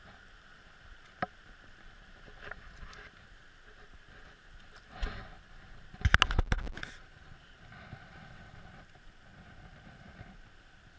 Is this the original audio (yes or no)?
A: yes